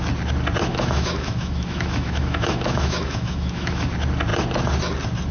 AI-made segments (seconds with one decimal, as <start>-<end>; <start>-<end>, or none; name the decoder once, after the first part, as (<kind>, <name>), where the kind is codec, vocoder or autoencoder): 0.7-3.9 (autoencoder, DAC-VAE)